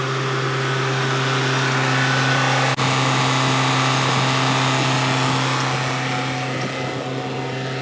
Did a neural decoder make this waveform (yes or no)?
no